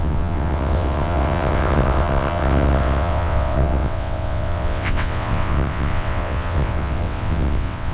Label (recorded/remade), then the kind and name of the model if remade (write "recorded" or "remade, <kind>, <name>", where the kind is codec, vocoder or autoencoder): remade, vocoder, WaveNeXt